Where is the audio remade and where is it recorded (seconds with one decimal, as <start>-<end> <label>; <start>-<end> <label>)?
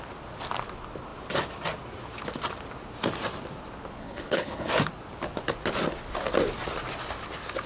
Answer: 0.0-4.0 recorded; 4.0-4.7 remade; 4.7-7.7 recorded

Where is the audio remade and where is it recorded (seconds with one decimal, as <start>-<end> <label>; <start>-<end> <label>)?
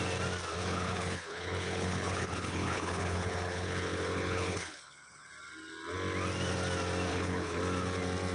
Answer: 0.0-0.6 recorded; 0.6-5.3 remade; 5.3-7.1 recorded; 7.1-7.6 remade; 7.6-8.3 recorded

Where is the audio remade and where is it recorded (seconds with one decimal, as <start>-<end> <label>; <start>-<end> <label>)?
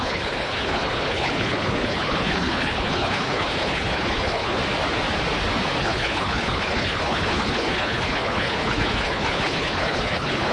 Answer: 0.0-4.6 remade; 4.6-5.8 recorded; 5.8-10.5 remade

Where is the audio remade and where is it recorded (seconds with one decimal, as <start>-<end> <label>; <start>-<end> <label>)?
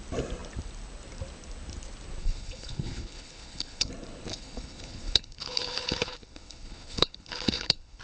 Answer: 0.0-2.2 recorded; 2.2-3.9 remade; 3.9-4.3 recorded; 4.3-8.0 remade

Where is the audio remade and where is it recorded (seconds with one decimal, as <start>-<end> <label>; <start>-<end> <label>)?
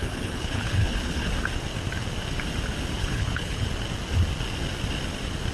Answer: 0.0-1.3 remade; 1.3-3.0 recorded; 3.0-3.7 remade; 3.7-5.5 recorded